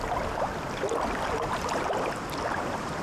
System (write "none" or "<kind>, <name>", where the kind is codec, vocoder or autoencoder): none